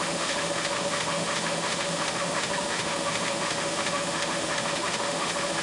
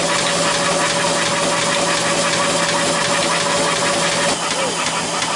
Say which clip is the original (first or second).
second